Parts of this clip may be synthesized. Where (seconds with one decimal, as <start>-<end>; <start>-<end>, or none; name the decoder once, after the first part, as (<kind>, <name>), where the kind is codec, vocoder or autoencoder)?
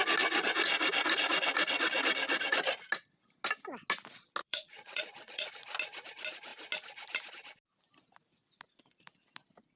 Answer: 4.4-5.5 (vocoder, Vocos)